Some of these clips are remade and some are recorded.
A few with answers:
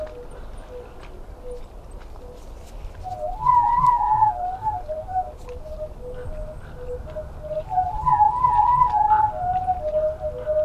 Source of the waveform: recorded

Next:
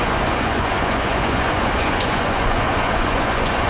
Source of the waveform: remade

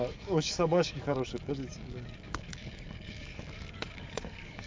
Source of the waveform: remade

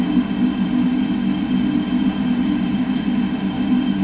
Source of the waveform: recorded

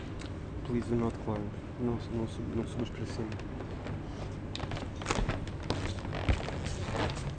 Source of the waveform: recorded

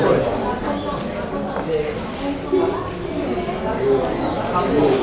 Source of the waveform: recorded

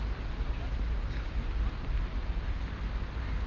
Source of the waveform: recorded